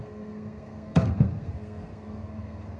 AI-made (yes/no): yes